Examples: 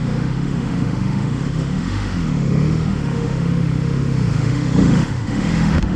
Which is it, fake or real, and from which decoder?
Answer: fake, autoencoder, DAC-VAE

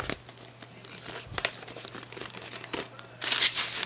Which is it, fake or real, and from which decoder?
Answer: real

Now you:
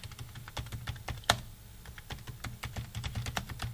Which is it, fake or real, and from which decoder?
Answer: real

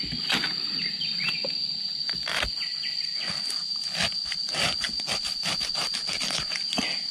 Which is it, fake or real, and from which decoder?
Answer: real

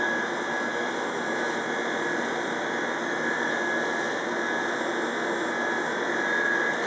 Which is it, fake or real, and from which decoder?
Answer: real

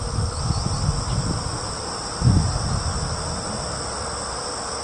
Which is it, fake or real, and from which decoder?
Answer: real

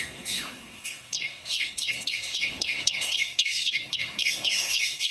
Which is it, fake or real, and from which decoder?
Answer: fake, codec, SNAC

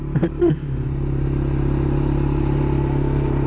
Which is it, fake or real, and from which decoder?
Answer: real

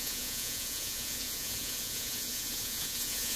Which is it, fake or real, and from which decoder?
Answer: fake, vocoder, Vocos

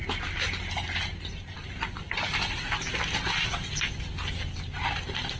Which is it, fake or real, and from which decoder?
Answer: real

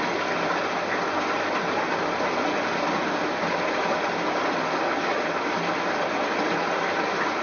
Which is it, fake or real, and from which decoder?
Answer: real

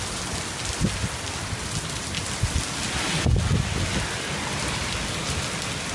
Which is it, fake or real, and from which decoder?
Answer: real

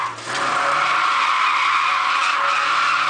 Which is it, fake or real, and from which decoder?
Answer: real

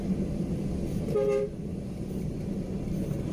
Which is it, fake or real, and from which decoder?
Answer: real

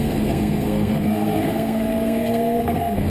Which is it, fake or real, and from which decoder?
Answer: fake, codec, SNAC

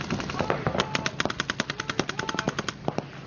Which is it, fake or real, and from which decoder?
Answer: real